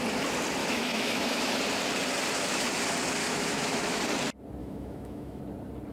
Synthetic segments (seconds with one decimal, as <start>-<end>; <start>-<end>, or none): 0.6-1.6; 3.2-4.0; 4.6-5.4

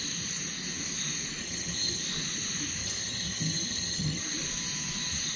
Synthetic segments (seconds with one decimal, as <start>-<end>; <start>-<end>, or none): 1.4-2.0; 2.8-4.2

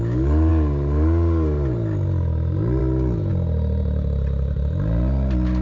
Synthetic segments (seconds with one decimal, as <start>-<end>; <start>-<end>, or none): none

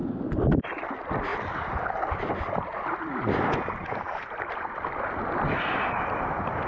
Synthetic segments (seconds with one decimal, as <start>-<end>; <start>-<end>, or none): none